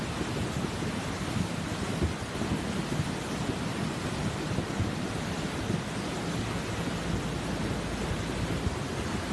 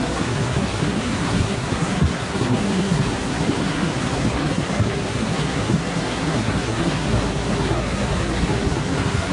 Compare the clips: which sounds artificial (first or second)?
second